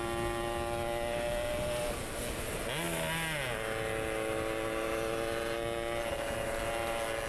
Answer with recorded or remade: recorded